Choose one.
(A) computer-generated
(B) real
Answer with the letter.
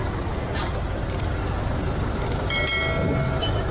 B